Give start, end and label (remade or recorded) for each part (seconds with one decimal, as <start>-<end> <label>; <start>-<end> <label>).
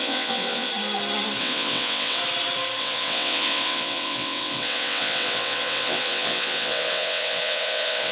0.0-0.7 remade; 0.7-1.4 recorded; 1.4-2.2 remade; 2.2-2.8 recorded; 2.8-8.1 remade